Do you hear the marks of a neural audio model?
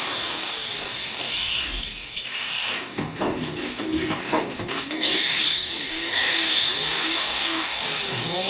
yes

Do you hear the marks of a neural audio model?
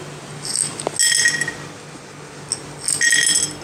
no